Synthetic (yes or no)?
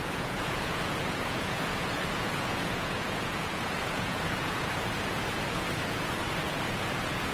yes